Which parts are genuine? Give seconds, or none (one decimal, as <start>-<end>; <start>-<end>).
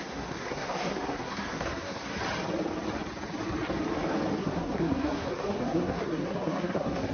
2.1-4.4